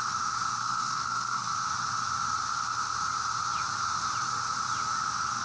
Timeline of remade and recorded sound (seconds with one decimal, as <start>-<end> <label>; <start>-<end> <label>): 0.0-0.6 recorded; 0.6-1.5 remade; 1.5-5.4 recorded